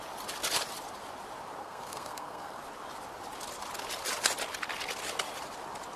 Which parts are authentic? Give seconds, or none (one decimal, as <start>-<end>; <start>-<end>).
0.0-1.6; 2.6-6.0